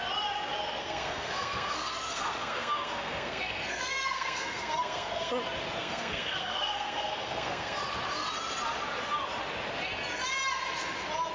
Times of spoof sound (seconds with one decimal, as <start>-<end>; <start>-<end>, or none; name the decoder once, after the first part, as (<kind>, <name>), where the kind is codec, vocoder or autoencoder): 0.8-5.3 (codec, SNAC); 5.8-7.8